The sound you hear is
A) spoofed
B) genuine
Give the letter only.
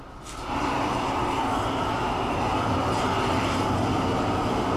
B